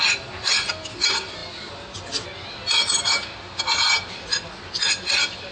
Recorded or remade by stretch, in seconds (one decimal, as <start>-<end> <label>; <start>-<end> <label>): 0.0-5.5 recorded